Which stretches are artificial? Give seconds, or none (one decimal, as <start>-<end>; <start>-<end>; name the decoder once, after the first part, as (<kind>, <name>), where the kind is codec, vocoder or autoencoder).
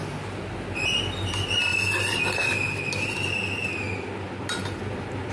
none